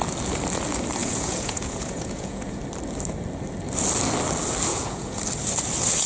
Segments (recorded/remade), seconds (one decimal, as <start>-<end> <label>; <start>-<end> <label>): 0.0-1.0 recorded; 1.0-2.6 remade; 2.6-4.7 recorded; 4.7-5.2 remade; 5.2-6.1 recorded

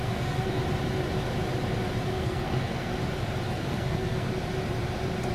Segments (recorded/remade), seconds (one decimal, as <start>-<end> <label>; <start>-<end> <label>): 0.0-0.6 remade; 0.6-2.1 recorded; 2.1-2.9 remade; 2.9-3.5 recorded; 3.5-4.3 remade; 4.3-5.3 recorded

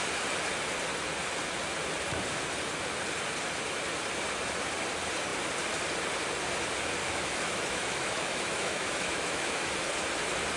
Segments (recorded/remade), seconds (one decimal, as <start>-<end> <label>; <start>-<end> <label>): 0.0-7.0 recorded; 7.0-9.7 remade; 9.7-10.6 recorded

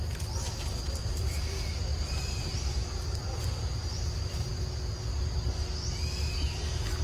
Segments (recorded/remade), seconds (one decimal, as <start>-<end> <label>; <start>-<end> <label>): 0.0-0.4 recorded; 0.4-1.1 remade; 1.1-1.9 recorded; 1.9-3.0 remade; 3.0-3.8 recorded; 3.8-4.5 remade; 4.5-7.0 recorded